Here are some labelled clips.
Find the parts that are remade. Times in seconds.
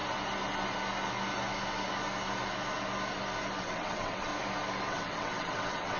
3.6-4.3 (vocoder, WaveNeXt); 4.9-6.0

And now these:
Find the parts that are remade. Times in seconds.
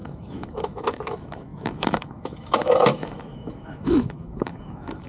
0.0-5.1 (autoencoder, DAC-VAE)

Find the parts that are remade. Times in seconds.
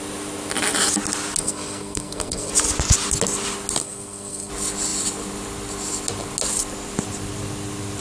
1.4-2.5 (codec, SNAC); 3.8-4.5